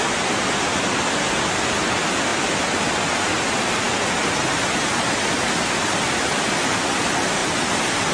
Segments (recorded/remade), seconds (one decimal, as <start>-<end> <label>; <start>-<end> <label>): 0.0-8.1 recorded